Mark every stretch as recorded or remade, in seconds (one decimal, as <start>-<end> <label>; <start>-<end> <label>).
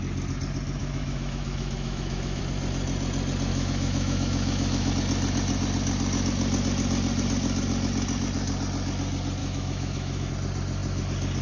0.0-0.8 recorded; 0.8-2.4 remade; 2.4-3.5 recorded; 3.5-4.9 remade; 4.9-9.4 recorded; 9.4-10.3 remade; 10.3-11.4 recorded